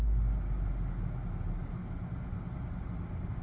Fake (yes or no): no